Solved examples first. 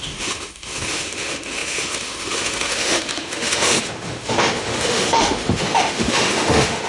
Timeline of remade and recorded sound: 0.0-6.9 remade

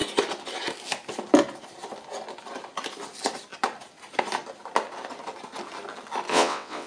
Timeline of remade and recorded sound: 0.0-6.3 recorded; 6.3-6.9 remade

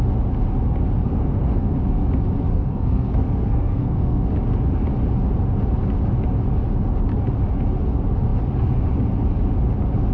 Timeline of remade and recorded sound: 0.0-1.0 recorded; 1.0-1.8 remade; 1.8-2.5 recorded; 2.5-4.3 remade; 4.3-10.1 recorded

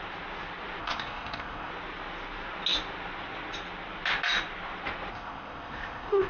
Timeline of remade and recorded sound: 0.0-0.8 recorded; 0.8-1.7 remade; 1.7-5.1 recorded; 5.1-6.3 remade